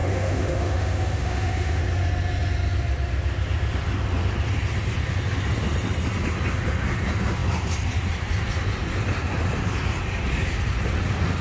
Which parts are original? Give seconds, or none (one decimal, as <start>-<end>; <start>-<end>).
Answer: 1.8-11.4

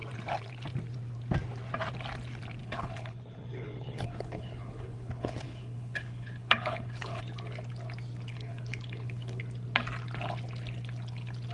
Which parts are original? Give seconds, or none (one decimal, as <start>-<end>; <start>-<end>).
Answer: 0.0-2.6; 7.2-8.3; 9.4-11.5